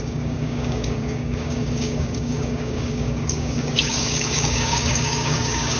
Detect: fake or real fake